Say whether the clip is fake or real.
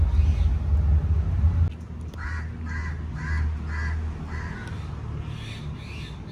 real